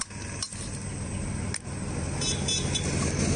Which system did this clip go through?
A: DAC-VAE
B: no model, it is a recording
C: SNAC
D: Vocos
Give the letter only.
B